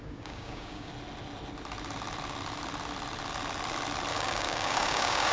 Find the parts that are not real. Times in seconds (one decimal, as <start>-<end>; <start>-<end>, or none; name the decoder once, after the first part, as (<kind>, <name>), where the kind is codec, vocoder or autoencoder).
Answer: 0.0-0.9 (codec, DAC); 4.1-5.3